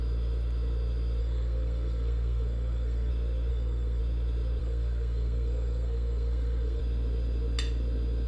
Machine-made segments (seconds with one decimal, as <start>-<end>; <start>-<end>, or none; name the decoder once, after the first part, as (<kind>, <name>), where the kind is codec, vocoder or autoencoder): 1.2-3.1 (codec, SNAC); 3.5-4.0; 4.6-6.8